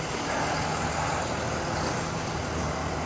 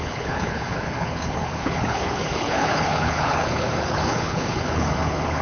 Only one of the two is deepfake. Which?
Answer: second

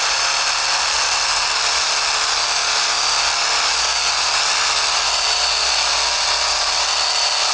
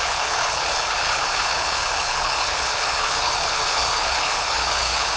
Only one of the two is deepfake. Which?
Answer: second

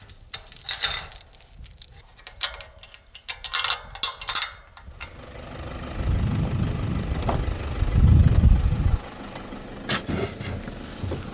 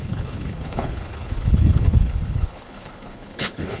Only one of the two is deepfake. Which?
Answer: second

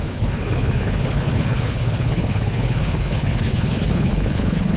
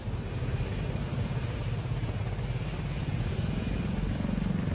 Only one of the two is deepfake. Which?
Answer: first